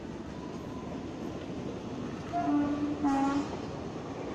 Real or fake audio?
real